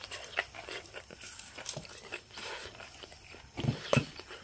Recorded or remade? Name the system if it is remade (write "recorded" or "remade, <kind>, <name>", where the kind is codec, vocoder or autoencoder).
recorded